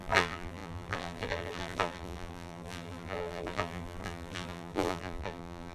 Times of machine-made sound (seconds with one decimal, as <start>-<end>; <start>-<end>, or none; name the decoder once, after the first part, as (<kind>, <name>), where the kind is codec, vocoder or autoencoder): 0.0-5.7 (vocoder, BigVGAN v2)

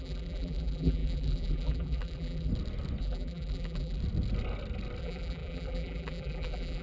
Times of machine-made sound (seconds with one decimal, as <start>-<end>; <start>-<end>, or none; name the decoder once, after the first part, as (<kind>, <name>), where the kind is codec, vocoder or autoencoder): 0.0-2.5 (vocoder, BigVGAN v2); 3.0-4.0; 5.0-6.8

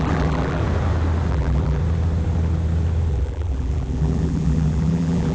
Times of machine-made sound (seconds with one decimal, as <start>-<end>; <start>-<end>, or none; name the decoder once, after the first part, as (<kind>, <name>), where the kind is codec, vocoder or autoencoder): 0.0-0.6 (vocoder, BigVGAN v2); 1.3-1.8; 3.1-5.3

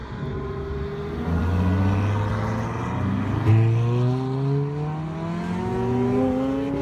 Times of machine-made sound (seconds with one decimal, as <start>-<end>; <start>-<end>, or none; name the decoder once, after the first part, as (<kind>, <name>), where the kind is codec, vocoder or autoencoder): 0.0-0.8 (vocoder, BigVGAN v2)

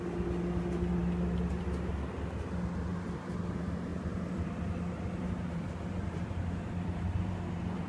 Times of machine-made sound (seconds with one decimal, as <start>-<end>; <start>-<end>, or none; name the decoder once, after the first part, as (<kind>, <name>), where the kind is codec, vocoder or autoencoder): 3.9-7.9 (vocoder, BigVGAN v2)

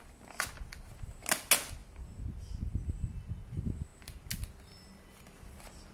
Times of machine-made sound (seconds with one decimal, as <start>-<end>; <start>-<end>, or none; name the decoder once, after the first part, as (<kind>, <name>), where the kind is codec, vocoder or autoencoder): none

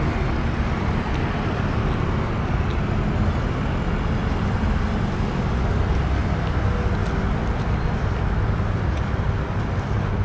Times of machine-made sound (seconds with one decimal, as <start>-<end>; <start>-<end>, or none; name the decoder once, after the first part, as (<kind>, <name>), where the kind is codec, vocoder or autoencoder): 7.0-9.6 (vocoder, BigVGAN v2)